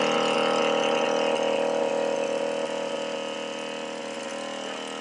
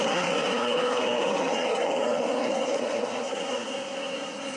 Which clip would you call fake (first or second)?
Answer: second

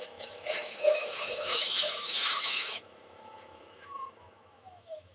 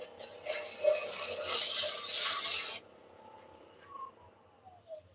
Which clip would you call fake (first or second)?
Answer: first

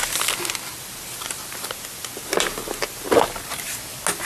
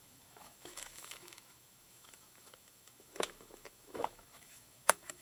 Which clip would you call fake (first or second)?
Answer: second